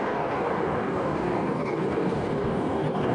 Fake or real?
fake